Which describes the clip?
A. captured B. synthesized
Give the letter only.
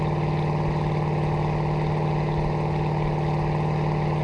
A